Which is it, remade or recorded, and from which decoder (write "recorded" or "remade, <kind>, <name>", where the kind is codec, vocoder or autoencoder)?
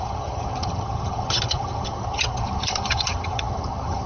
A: remade, vocoder, HiFi-GAN